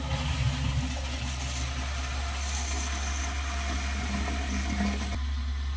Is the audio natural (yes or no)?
yes